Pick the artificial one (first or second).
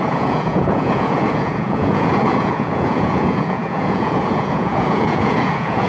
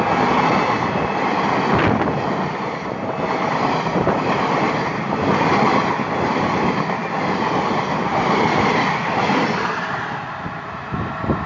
first